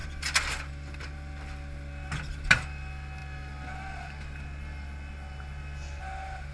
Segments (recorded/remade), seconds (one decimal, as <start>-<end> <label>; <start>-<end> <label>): 0.0-6.5 recorded